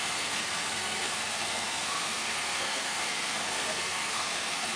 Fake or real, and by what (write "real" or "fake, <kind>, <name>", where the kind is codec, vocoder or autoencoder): fake, codec, SNAC